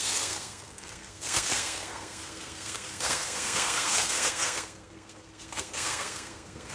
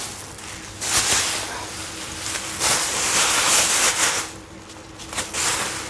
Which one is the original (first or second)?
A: second